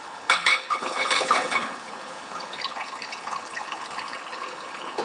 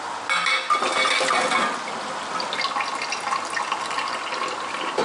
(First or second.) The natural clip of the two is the second